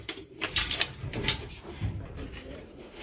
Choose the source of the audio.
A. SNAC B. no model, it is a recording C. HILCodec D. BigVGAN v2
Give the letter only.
D